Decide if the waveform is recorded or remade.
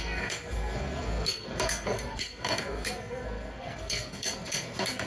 remade